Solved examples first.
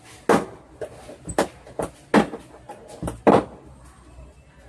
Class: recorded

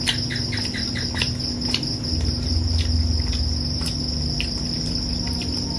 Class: recorded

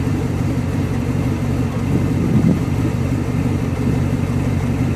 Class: recorded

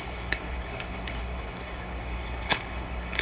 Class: remade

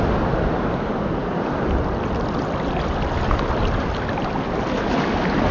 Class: recorded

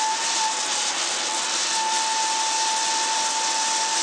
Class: recorded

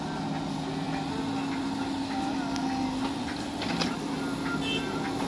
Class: recorded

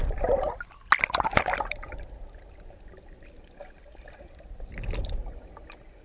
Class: recorded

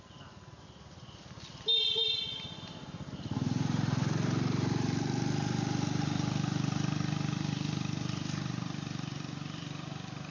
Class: recorded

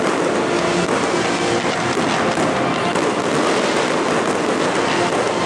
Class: recorded